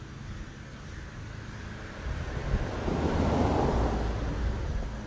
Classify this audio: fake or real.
real